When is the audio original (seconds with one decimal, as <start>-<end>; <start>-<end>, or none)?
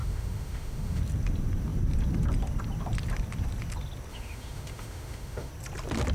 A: 1.0-4.1; 5.5-6.1